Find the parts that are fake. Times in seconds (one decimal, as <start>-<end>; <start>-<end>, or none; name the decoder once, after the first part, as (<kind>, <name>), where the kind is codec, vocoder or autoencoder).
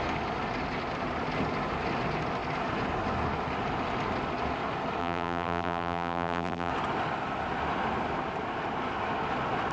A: 5.0-6.7 (vocoder, BigVGAN v2)